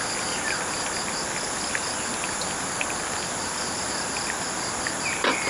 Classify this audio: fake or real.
real